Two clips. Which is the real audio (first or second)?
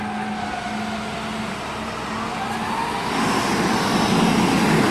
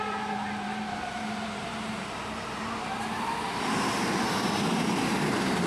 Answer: first